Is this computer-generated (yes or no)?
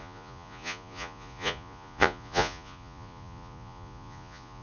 yes